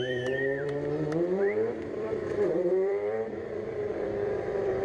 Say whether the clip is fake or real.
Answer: fake